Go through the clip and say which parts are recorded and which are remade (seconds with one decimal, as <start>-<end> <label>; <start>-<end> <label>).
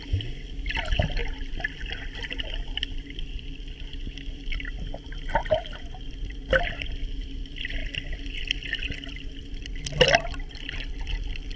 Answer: 0.0-5.4 recorded; 5.4-6.6 remade; 6.6-11.6 recorded